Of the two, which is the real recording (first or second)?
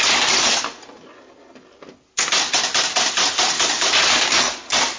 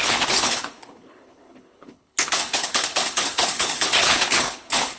first